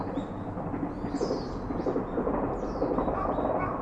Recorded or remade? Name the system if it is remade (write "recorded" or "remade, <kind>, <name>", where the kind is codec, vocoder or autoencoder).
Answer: recorded